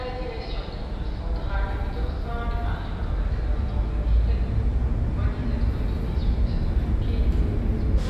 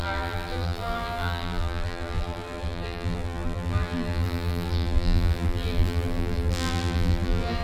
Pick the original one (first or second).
first